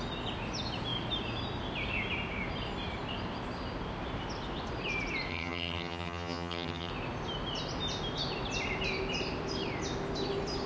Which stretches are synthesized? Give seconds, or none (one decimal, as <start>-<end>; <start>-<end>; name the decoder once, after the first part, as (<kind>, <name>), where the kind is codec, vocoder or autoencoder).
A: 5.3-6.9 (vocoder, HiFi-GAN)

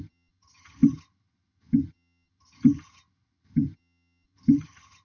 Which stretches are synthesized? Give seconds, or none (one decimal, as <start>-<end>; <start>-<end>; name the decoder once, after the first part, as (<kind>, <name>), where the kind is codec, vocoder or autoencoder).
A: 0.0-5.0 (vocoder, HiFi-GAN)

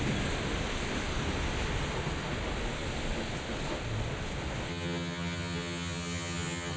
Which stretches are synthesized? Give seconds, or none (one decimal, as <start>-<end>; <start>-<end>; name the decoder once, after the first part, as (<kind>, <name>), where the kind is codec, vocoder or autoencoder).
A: 4.7-6.8 (vocoder, HiFi-GAN)